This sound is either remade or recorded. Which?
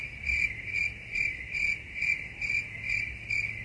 recorded